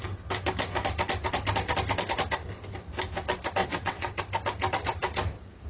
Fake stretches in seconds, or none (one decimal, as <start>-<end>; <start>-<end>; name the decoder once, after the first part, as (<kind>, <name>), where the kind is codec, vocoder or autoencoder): 3.6-4.2 (vocoder, WaveNeXt)